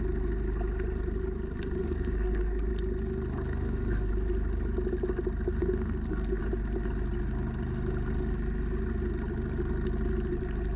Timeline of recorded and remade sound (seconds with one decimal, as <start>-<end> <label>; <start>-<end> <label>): 0.0-1.8 recorded; 1.8-2.7 remade; 2.7-3.5 recorded; 3.5-4.1 remade; 4.1-5.6 recorded; 5.6-6.4 remade; 6.4-10.8 recorded